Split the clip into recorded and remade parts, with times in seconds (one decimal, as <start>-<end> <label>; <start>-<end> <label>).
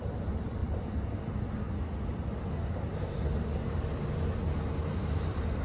0.0-5.6 recorded